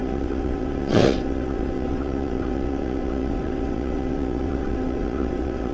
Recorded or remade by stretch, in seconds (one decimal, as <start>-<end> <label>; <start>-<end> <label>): 0.0-5.7 remade